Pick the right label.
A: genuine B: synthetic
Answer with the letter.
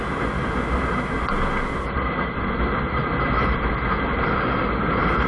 A